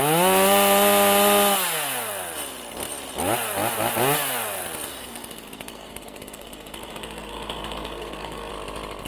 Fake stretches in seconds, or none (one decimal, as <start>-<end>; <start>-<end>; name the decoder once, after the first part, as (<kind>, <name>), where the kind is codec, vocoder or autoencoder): 4.9-8.5 (codec, SNAC)